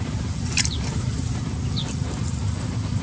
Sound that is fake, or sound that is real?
fake